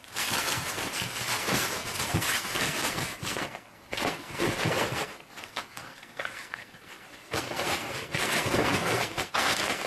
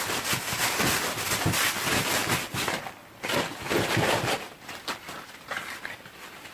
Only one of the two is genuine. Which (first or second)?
second